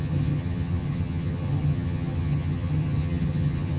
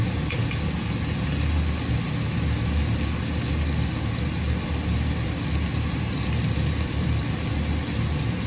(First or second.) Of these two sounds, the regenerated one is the first